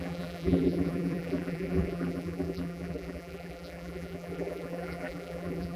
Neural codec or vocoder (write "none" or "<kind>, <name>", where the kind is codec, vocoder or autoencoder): vocoder, BigVGAN v2